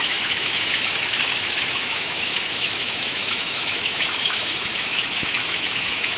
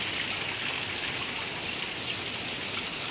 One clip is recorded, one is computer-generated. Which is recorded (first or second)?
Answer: second